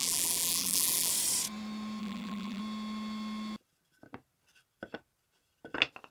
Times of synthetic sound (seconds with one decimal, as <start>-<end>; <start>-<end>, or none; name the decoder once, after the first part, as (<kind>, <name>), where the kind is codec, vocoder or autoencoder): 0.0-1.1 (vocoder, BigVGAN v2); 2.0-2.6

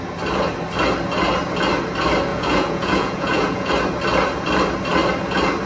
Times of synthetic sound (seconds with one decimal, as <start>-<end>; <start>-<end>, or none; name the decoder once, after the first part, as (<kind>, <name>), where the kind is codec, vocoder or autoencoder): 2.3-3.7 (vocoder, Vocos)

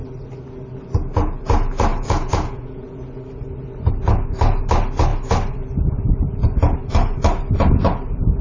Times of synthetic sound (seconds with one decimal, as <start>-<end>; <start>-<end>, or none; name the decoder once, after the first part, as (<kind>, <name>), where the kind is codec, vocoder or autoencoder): 1.9-3.2 (vocoder, Vocos)

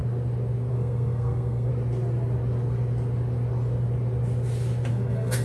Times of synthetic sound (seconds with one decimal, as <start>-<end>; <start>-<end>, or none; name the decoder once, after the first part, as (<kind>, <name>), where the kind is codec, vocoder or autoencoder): 0.7-1.7 (codec, SNAC); 4.9-5.4

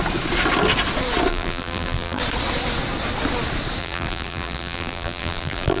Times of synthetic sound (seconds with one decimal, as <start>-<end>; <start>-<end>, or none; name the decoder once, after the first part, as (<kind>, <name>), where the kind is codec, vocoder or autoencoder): 1.3-2.2 (vocoder, BigVGAN v2); 3.8-5.8

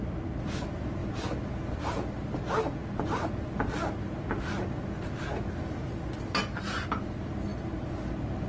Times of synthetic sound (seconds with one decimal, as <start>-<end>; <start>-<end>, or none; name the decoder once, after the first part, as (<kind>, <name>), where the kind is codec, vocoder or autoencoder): none